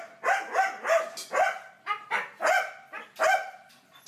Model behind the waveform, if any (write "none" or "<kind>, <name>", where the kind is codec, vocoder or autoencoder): none